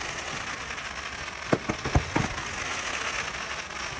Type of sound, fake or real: real